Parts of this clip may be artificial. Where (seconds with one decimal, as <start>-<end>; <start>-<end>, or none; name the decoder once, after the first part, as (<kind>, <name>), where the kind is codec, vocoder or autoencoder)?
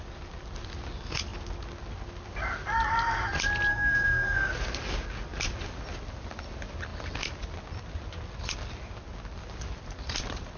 3.7-4.5 (codec, SNAC)